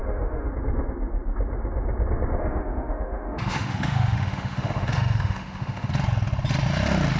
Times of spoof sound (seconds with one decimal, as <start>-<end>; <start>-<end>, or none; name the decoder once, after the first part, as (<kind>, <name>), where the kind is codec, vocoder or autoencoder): 0.0-0.5 (autoencoder, DAC-VAE); 2.4-5.9